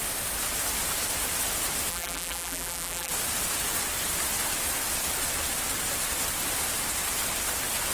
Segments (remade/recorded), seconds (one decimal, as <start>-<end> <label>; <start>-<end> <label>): 0.0-1.9 recorded; 1.9-3.1 remade; 3.1-7.9 recorded